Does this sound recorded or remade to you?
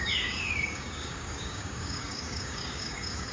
remade